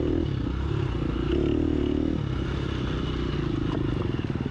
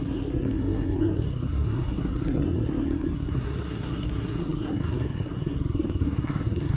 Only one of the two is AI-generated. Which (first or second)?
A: second